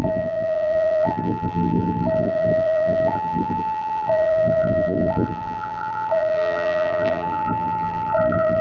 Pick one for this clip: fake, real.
fake